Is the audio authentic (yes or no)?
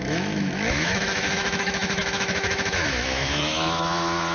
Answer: no